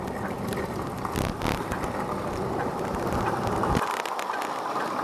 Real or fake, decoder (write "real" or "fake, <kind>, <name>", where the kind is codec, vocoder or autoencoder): real